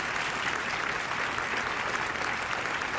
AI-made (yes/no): no